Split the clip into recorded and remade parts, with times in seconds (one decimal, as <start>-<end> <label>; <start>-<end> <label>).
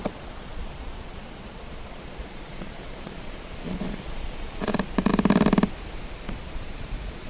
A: 0.0-5.1 remade; 5.1-6.3 recorded; 6.3-7.3 remade